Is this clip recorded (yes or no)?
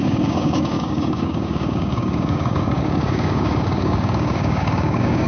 no